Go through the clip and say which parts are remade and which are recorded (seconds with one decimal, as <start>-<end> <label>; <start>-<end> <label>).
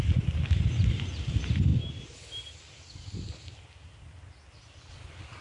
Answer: 0.0-5.4 recorded